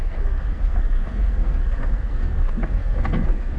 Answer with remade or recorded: remade